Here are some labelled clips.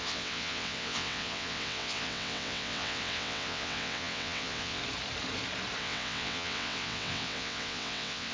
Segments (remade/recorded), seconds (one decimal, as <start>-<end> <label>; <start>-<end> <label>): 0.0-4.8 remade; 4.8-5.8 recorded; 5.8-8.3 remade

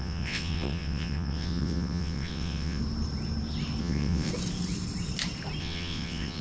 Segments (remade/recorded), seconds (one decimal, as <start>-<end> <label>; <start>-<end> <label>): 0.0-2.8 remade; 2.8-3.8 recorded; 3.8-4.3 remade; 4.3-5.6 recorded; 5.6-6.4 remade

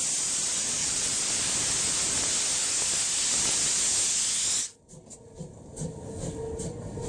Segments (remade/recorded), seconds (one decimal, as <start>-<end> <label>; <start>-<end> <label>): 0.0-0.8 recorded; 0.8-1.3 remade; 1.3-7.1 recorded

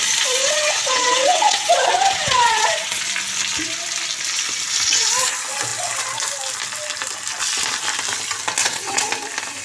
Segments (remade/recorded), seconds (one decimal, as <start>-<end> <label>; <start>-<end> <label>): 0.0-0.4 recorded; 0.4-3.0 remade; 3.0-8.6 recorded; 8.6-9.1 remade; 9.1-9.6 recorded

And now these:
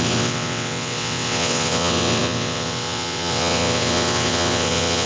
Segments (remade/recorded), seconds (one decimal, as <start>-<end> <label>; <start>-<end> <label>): 0.0-5.1 remade

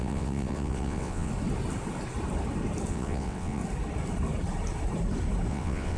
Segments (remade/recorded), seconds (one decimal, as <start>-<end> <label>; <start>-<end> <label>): 0.0-1.3 remade; 1.3-2.9 recorded; 2.9-3.6 remade; 3.6-5.5 recorded; 5.5-6.0 remade

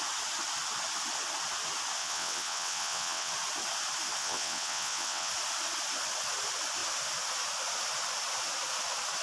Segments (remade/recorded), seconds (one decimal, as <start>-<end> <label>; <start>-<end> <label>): 0.0-2.0 recorded; 2.0-3.3 remade; 3.3-4.2 recorded; 4.2-5.3 remade; 5.3-9.2 recorded

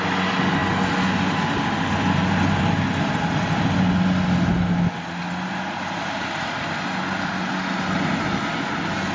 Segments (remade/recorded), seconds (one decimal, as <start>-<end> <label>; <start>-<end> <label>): 0.0-9.1 recorded